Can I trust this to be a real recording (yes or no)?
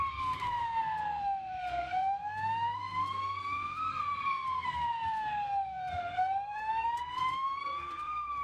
no